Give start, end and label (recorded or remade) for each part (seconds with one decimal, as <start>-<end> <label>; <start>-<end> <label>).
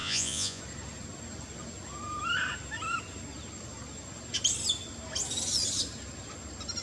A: 0.0-0.6 remade; 0.6-6.8 recorded